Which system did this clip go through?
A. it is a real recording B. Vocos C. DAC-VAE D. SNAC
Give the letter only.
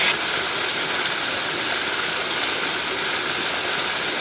A